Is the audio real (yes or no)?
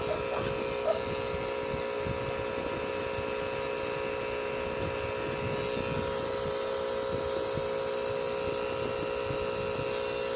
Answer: yes